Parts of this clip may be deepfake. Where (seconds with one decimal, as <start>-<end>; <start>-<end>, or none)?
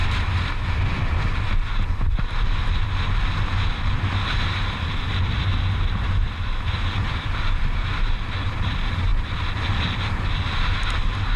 0.0-1.1